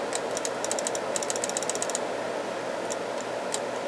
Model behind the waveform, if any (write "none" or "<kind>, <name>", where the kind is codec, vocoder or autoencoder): none